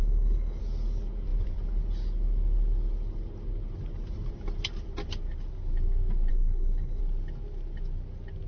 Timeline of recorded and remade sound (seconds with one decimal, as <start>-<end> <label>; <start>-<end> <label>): 0.0-0.6 remade; 0.6-6.3 recorded; 6.3-7.0 remade; 7.0-8.5 recorded